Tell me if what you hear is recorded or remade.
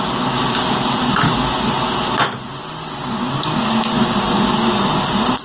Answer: recorded